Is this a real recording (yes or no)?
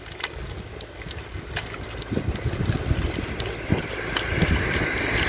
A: yes